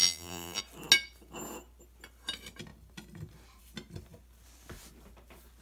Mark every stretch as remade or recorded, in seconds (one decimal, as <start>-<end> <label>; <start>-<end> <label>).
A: 0.0-0.6 remade; 0.6-5.6 recorded